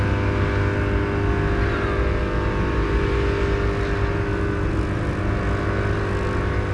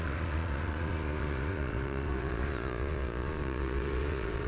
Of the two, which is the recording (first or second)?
first